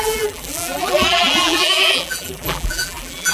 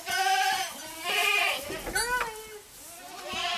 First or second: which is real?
second